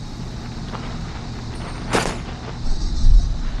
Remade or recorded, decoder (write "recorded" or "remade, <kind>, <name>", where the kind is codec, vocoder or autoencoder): recorded